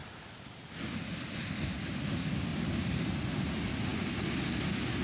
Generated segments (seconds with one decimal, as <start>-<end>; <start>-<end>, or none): 0.0-0.7; 2.5-3.2